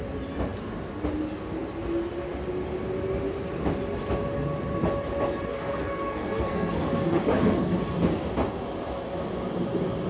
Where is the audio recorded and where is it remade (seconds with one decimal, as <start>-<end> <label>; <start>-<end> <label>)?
0.0-5.5 recorded; 5.5-7.8 remade; 7.8-10.1 recorded